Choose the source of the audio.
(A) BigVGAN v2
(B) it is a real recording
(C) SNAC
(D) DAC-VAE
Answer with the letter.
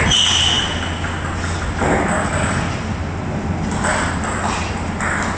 B